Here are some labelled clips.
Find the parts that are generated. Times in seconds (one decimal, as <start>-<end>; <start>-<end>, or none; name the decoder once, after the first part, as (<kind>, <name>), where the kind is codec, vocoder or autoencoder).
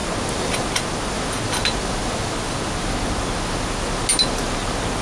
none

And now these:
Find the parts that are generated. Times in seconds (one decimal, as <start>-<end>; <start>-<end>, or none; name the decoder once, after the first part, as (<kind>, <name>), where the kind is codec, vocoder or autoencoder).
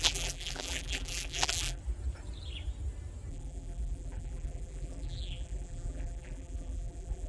0.0-1.8 (vocoder, BigVGAN v2); 3.3-7.3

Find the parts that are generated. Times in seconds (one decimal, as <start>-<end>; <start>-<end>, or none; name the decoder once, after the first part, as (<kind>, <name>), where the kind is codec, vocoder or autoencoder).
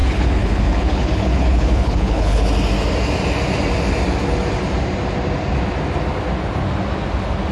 0.0-2.5 (codec, HILCodec)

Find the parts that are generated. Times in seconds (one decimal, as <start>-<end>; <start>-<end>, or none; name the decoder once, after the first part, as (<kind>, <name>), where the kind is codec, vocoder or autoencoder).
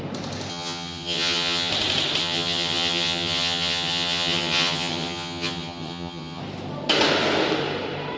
0.5-1.7 (vocoder, HiFi-GAN); 2.2-6.4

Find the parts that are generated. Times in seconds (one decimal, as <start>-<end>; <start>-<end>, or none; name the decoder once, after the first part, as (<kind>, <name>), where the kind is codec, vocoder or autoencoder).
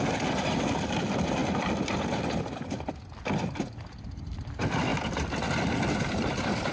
none